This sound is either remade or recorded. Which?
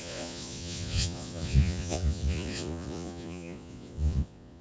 remade